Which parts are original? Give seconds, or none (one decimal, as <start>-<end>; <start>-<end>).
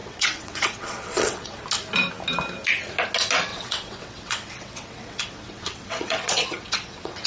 1.6-3.5